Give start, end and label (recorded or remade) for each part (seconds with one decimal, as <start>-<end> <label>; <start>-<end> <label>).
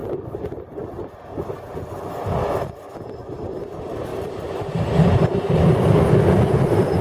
0.0-0.8 remade; 0.8-1.3 recorded; 1.3-1.9 remade; 1.9-4.1 recorded; 4.1-5.6 remade; 5.6-7.0 recorded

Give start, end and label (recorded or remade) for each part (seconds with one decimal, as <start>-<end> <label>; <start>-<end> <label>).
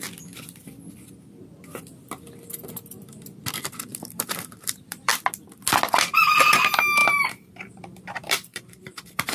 0.0-3.9 recorded; 3.9-5.1 remade; 5.1-7.0 recorded; 7.0-7.8 remade; 7.8-8.5 recorded; 8.5-9.3 remade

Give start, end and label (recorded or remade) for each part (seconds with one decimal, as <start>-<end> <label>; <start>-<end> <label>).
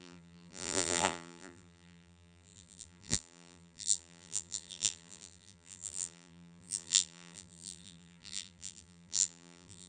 0.0-9.9 remade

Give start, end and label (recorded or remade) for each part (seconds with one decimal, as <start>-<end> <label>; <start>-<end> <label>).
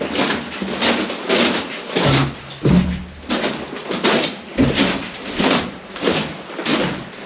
0.0-3.8 recorded; 3.8-6.8 remade; 6.8-7.3 recorded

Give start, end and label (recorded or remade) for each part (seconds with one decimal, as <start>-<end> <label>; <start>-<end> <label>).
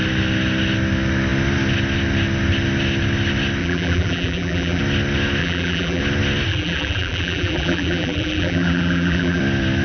0.0-3.6 recorded; 3.6-4.8 remade; 4.8-5.4 recorded; 5.4-6.0 remade; 6.0-6.5 recorded; 6.5-9.4 remade; 9.4-9.8 recorded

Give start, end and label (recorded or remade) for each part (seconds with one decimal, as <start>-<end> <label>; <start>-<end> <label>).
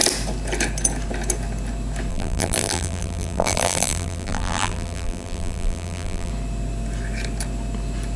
0.0-2.1 recorded; 2.1-6.3 remade; 6.3-8.2 recorded